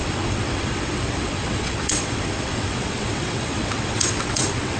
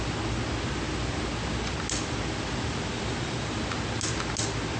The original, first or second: second